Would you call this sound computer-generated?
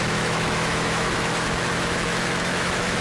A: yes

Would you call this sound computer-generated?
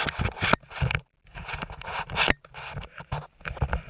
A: no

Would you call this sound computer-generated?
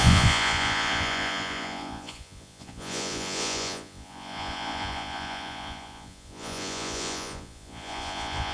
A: yes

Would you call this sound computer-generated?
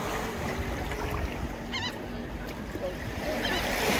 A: no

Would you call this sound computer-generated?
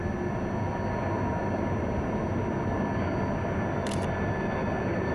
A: no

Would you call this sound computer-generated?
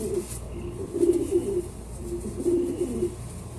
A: no